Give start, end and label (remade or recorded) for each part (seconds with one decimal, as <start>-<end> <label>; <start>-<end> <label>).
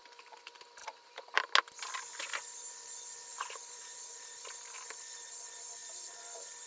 0.0-0.8 recorded; 0.8-1.3 remade; 1.3-3.3 recorded; 3.3-4.4 remade; 4.4-6.7 recorded